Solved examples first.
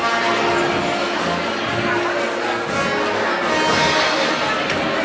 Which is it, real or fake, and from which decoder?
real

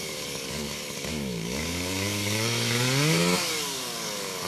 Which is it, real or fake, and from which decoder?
fake, codec, DAC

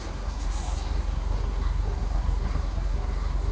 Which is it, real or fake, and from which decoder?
fake, codec, SNAC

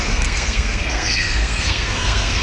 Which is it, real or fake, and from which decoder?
fake, codec, SNAC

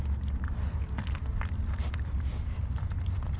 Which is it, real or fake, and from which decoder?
real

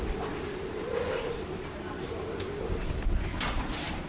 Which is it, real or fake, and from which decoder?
real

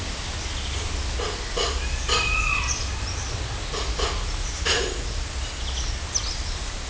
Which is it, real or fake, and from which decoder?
real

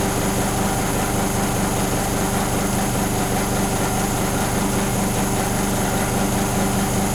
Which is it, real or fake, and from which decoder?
real